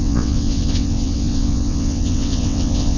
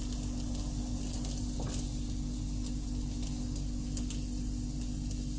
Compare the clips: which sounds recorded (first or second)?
second